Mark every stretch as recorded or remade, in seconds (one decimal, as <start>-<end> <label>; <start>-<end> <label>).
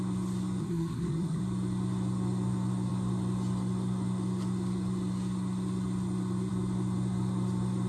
0.0-0.6 recorded; 0.6-1.4 remade; 1.4-7.9 recorded